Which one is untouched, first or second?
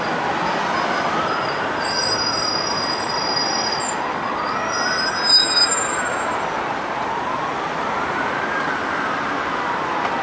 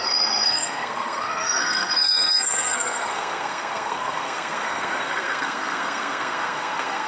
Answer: first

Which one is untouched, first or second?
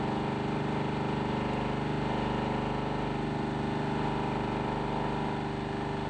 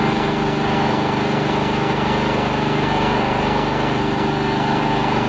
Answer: first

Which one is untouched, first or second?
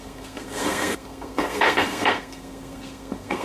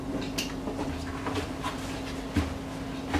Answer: second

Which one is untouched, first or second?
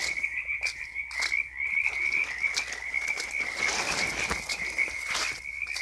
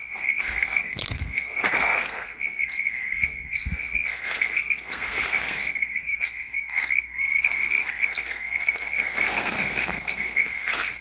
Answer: first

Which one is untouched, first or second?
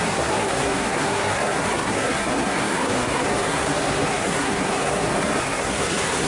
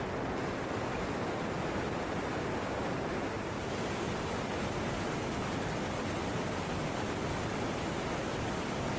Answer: second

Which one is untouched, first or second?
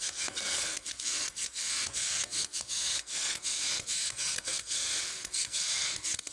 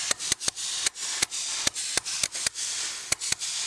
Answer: second